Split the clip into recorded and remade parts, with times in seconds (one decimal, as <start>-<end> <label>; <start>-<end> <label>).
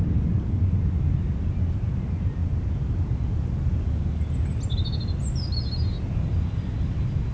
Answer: 0.0-7.3 recorded